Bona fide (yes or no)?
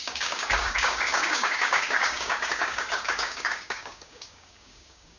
no